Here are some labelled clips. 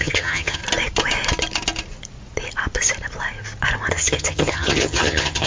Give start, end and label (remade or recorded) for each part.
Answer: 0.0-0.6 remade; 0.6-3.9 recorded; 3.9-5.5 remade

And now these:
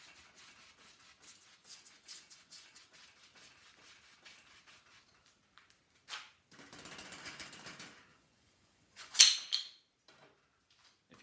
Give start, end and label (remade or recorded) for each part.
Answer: 0.0-1.6 recorded; 1.6-2.9 remade; 2.9-7.0 recorded; 7.0-7.5 remade; 7.5-8.1 recorded; 8.1-9.2 remade; 9.2-11.2 recorded

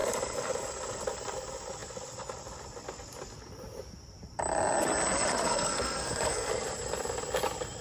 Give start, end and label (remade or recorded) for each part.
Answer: 0.0-5.4 recorded; 5.4-6.5 remade; 6.5-7.8 recorded

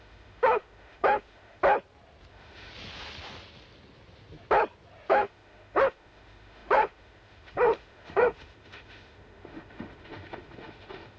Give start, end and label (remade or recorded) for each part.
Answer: 0.0-1.6 remade; 1.6-2.3 recorded; 2.3-2.7 remade; 2.7-5.1 recorded; 5.1-11.2 remade